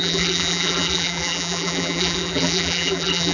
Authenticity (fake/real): fake